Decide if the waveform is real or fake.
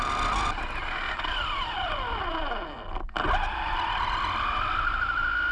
real